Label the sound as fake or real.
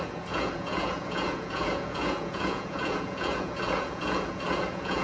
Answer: fake